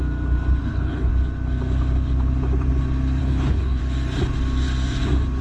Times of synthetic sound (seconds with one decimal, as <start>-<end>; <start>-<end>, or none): 0.6-1.1; 3.2-3.8